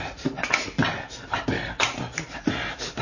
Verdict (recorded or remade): recorded